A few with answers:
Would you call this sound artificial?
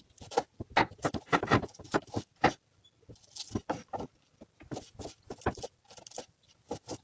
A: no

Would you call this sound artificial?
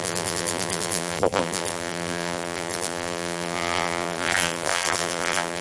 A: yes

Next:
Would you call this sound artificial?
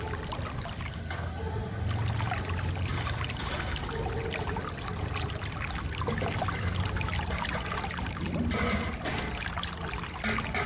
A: no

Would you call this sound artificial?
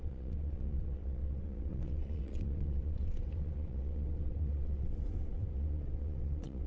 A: yes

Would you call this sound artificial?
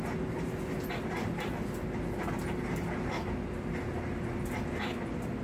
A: no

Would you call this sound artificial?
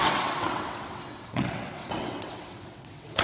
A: yes